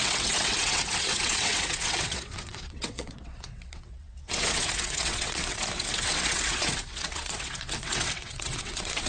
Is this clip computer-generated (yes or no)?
yes